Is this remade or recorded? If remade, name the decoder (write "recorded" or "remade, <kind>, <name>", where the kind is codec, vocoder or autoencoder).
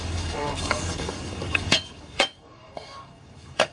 remade, codec, DAC